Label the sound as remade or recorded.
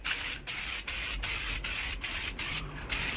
recorded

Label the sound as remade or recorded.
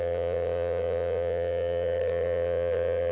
remade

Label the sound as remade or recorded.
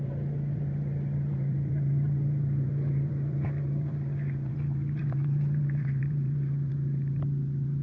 remade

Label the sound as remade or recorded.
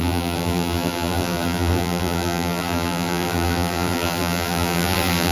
remade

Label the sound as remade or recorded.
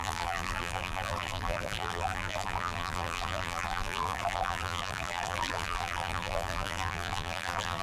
remade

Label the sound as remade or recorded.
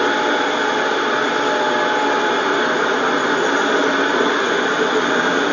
recorded